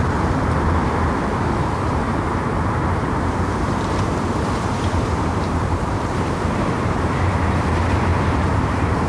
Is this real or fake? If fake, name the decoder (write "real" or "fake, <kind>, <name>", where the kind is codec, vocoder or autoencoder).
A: fake, vocoder, BigVGAN v2